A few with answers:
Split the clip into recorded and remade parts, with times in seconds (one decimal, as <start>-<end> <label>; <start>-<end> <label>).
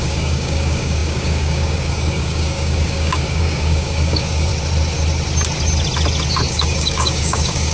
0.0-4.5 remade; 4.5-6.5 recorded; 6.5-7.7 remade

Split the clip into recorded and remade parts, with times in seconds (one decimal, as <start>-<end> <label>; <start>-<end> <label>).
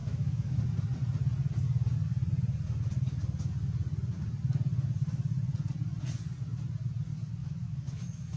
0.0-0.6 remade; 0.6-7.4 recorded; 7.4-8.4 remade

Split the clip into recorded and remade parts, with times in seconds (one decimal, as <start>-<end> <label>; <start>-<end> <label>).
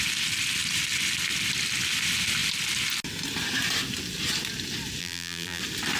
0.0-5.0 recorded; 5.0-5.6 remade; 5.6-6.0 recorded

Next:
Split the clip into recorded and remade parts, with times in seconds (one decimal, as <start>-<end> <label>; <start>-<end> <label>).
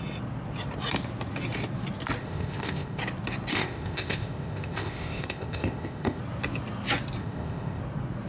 0.0-2.2 recorded; 2.2-3.0 remade; 3.0-3.5 recorded; 3.5-6.2 remade; 6.2-7.2 recorded; 7.2-7.8 remade; 7.8-8.3 recorded